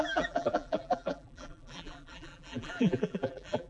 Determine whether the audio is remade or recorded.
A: remade